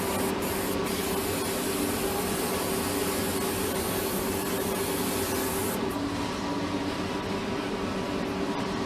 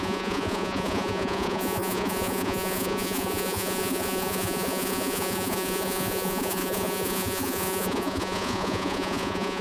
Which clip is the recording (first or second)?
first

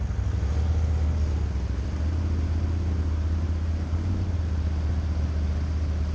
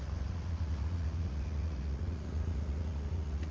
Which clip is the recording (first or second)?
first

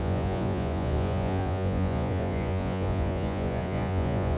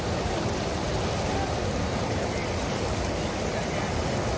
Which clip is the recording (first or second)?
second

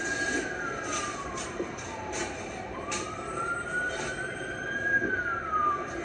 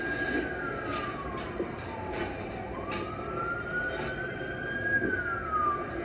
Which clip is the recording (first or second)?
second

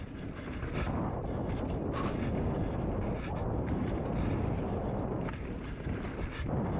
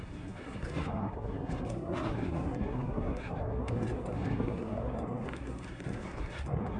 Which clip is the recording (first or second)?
first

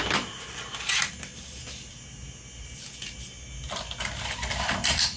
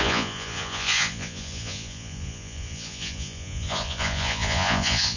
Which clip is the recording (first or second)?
first